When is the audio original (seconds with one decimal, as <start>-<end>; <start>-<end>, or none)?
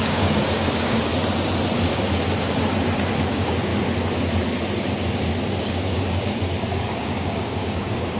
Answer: 1.1-3.3; 3.7-5.6